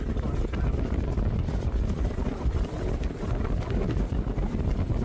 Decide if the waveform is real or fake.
real